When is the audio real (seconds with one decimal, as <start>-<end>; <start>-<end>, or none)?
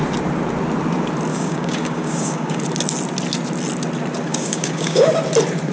0.0-1.3; 2.6-4.3; 5.1-5.7